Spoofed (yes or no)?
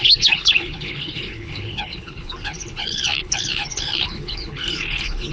yes